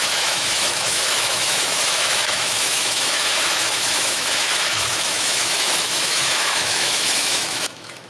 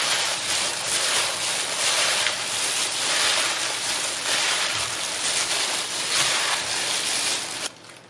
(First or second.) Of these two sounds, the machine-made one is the first